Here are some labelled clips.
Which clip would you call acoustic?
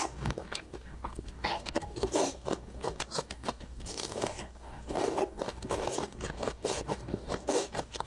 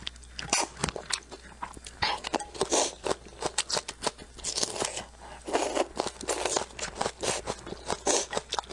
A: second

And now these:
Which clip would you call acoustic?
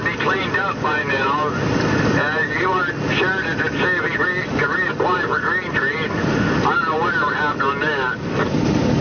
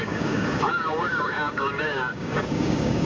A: first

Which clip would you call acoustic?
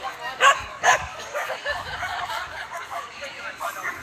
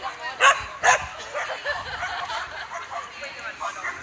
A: second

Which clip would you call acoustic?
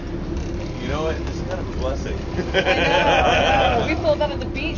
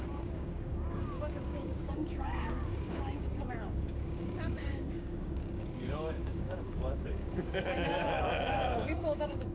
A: first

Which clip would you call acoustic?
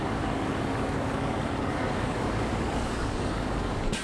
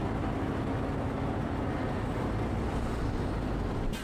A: second